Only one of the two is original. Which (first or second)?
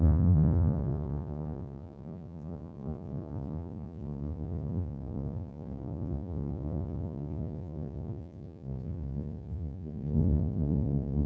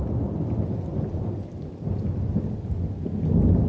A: second